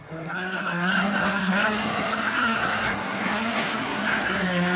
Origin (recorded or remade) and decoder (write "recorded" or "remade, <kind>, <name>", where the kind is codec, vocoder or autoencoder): remade, codec, SNAC